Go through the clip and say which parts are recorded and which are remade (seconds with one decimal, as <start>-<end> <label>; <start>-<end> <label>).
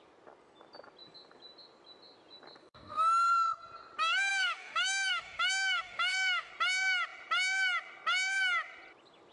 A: 0.0-2.6 recorded; 2.6-3.3 remade; 3.3-4.3 recorded; 4.3-6.5 remade; 6.5-9.3 recorded